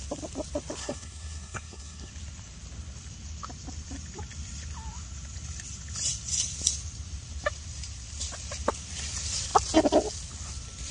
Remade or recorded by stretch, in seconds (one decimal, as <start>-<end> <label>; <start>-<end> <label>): 0.0-0.8 recorded; 0.8-2.1 remade; 2.1-10.9 recorded